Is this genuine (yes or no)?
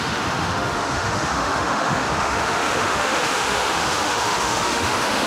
no